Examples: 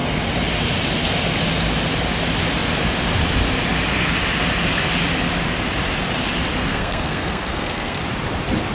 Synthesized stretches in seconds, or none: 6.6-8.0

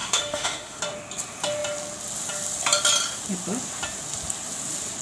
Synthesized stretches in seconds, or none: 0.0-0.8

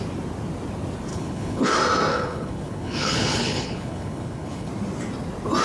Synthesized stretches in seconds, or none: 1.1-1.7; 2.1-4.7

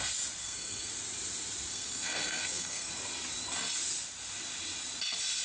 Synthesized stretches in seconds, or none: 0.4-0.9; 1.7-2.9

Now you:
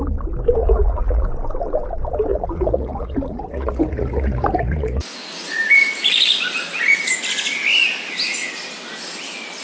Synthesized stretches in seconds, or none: 0.6-1.3; 2.3-7.1

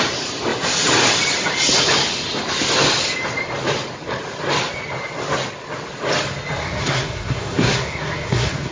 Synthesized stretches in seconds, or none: 6.6-8.7